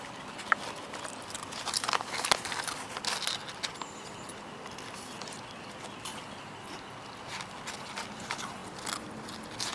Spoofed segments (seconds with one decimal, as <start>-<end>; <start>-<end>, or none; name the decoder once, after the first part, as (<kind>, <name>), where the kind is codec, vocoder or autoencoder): none